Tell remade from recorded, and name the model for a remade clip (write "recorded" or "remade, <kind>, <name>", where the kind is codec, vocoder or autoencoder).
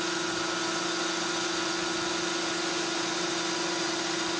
recorded